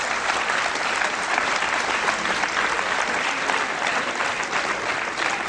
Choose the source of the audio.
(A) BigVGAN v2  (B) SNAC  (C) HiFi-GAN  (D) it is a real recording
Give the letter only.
A